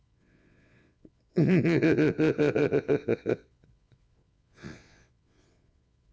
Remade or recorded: remade